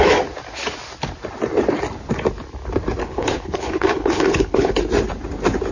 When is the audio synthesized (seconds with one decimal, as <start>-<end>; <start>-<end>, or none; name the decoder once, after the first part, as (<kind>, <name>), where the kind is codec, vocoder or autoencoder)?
3.0-4.8 (codec, HILCodec)